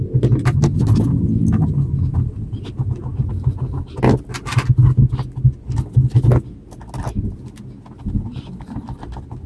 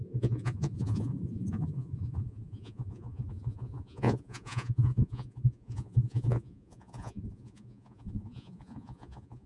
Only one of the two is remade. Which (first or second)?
second